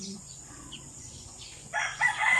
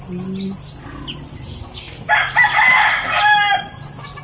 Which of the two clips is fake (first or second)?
first